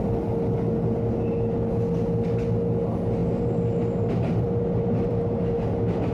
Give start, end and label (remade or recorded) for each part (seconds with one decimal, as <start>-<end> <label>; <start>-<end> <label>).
0.0-3.2 recorded; 3.2-5.2 remade; 5.2-6.1 recorded